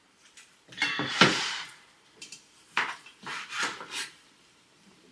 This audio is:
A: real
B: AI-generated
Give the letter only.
B